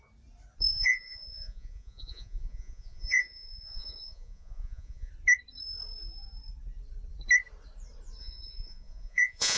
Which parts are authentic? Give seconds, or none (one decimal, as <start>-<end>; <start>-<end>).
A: 0.0-0.7; 5.1-8.2

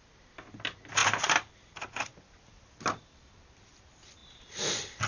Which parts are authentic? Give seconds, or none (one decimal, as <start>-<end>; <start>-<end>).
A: 0.0-5.1

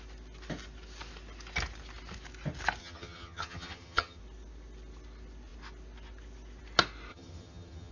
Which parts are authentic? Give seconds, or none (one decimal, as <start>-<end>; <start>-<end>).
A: 0.0-2.8; 4.2-7.1

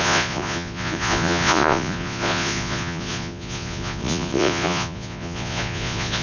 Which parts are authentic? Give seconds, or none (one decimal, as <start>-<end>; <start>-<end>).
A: none

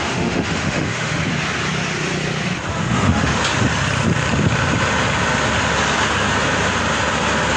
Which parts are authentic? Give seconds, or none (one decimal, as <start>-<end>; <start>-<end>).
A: 1.2-2.7; 3.4-7.6

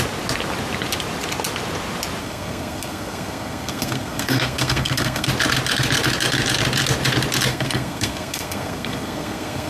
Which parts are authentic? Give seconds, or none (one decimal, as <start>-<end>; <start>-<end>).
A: 0.0-2.2; 5.3-7.5

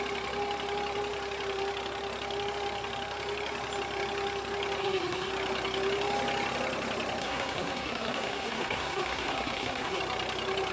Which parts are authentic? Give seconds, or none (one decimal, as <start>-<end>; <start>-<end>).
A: 0.0-4.8; 5.3-7.2; 10.0-10.7

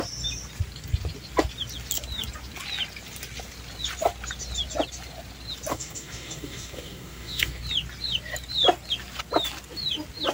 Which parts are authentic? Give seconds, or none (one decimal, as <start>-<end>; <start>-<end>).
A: 0.0-5.7; 7.6-10.3